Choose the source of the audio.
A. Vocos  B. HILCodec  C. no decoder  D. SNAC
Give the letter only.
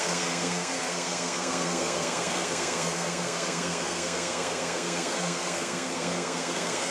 D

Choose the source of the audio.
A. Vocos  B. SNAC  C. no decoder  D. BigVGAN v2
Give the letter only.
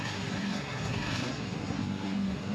B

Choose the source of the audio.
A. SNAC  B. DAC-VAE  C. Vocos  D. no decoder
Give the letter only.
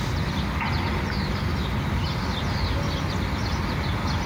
D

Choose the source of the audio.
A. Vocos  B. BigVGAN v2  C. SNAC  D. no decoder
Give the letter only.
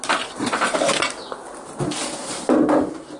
D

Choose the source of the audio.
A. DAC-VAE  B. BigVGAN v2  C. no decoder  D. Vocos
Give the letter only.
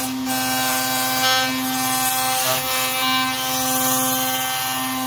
C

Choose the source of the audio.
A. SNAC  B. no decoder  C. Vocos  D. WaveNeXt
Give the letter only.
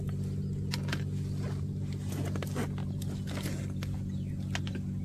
B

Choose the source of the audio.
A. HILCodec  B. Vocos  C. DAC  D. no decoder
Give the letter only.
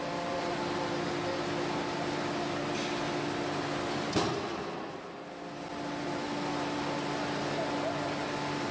D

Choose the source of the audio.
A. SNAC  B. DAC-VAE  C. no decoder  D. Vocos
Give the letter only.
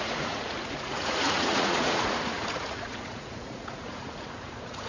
D